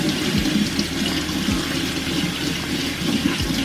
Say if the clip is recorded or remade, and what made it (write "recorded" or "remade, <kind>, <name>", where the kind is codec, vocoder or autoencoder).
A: recorded